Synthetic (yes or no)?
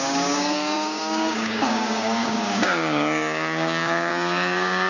yes